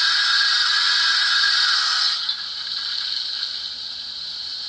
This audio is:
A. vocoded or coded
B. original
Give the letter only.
B